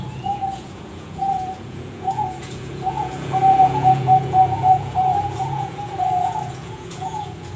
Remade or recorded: remade